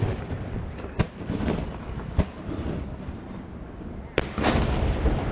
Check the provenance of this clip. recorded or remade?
recorded